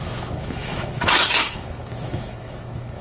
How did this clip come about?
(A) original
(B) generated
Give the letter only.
B